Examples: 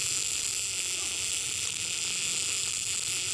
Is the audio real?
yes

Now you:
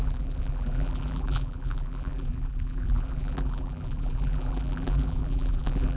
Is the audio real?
no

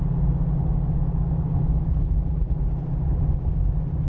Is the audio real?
yes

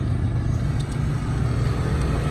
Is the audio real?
yes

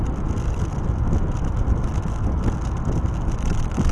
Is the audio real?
yes